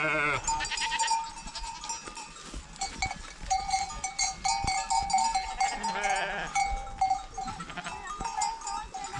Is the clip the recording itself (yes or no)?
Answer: yes